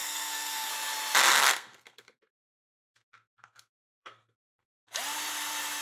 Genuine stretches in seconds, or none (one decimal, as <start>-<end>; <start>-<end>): 0.7-1.3; 4.8-5.8

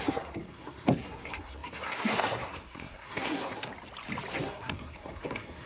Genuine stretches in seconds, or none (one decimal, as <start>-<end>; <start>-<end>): 3.7-4.3